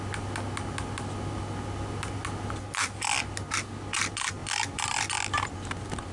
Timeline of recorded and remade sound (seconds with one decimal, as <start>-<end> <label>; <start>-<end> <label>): 0.0-6.1 recorded